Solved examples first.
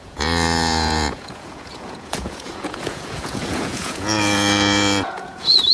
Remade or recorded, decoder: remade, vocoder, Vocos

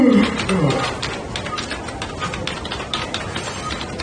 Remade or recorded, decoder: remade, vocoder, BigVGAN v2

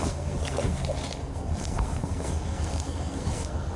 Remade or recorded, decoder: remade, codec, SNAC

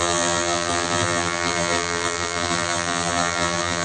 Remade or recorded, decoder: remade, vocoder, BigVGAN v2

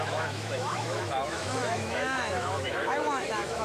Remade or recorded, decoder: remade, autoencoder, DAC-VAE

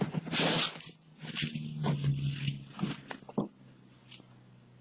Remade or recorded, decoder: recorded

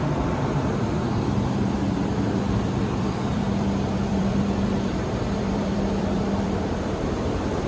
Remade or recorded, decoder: remade, vocoder, BigVGAN v2